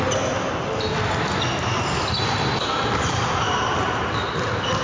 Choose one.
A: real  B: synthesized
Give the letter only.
A